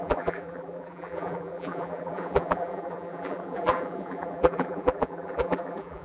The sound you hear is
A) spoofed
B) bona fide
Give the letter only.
A